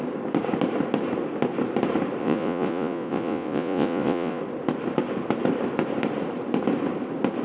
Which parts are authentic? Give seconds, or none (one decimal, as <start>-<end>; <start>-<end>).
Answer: 0.0-2.2; 4.4-7.4